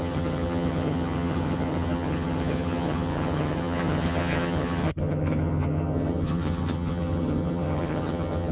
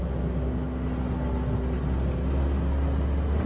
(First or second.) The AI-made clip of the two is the first